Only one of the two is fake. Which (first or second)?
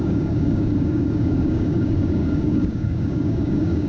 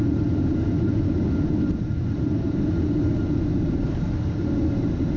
first